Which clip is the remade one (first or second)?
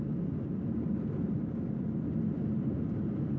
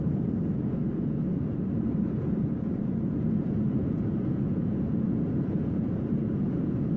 second